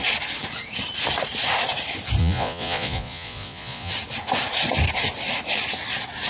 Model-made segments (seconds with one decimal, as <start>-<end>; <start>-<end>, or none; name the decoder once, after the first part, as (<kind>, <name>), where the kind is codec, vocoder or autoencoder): 2.2-3.9 (vocoder, Vocos)